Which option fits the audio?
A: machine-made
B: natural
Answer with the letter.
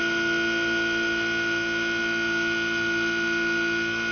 B